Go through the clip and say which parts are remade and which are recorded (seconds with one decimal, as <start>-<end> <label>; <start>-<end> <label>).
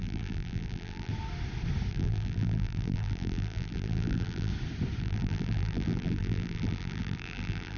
0.0-1.1 remade; 1.1-1.9 recorded; 1.9-4.5 remade; 4.5-5.0 recorded; 5.0-7.8 remade